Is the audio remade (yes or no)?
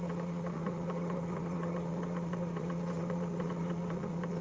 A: yes